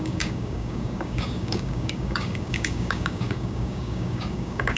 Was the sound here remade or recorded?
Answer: remade